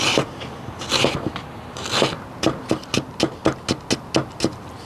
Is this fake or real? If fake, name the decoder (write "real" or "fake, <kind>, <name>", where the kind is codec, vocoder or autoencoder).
real